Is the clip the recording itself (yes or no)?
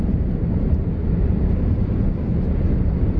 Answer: yes